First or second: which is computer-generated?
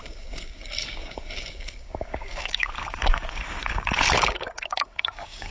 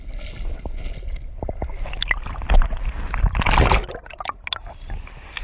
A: first